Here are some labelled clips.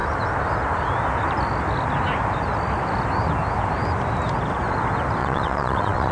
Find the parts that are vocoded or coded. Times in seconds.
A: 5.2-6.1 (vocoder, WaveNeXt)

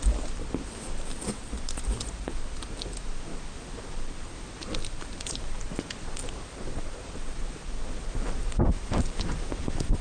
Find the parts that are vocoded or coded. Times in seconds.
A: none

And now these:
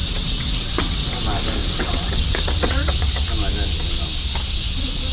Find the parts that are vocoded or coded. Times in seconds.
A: 0.0-1.2 (vocoder, WaveNeXt); 1.6-3.3

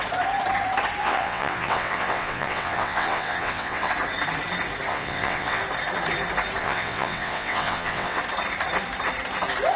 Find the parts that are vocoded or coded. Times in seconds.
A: 1.0-3.9 (vocoder, WaveNeXt); 4.9-5.6; 6.6-8.2

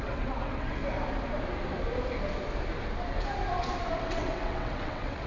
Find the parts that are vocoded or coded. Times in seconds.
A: 0.0-0.8 (vocoder, WaveNeXt); 4.0-5.3